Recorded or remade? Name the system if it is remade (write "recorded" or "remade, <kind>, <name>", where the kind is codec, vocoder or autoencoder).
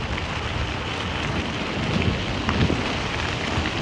recorded